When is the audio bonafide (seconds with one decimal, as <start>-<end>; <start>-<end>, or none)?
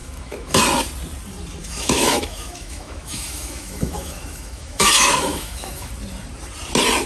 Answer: 0.6-1.6; 5.9-7.1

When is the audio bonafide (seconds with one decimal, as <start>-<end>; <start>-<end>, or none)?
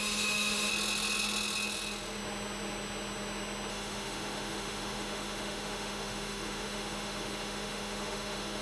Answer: 0.7-3.7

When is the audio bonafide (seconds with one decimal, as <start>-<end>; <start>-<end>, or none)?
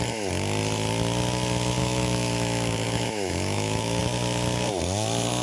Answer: 0.0-1.8; 4.0-5.4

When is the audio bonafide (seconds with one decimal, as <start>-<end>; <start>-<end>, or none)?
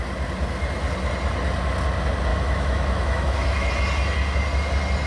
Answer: 0.0-2.3; 3.7-5.1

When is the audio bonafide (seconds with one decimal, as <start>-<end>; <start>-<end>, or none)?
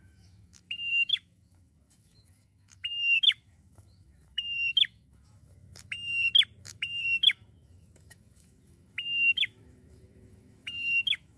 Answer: 6.1-6.6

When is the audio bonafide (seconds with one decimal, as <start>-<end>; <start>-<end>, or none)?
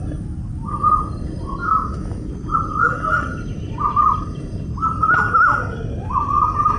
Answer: 0.0-1.6; 2.3-6.8